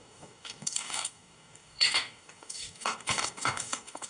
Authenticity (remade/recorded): remade